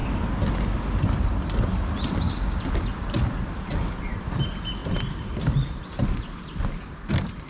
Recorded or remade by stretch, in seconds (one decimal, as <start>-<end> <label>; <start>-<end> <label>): 0.0-7.5 recorded